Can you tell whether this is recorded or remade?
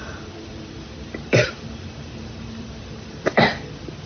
remade